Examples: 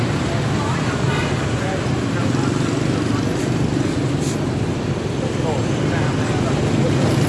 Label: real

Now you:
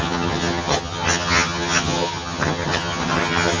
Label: fake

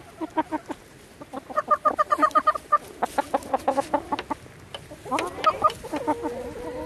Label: real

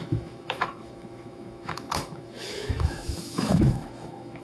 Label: fake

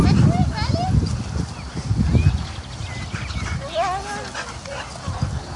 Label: real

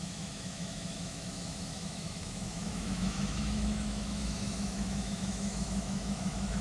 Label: fake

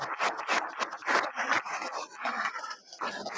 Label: real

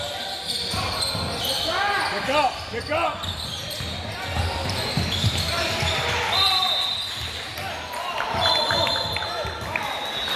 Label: real